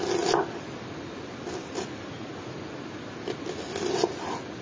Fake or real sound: real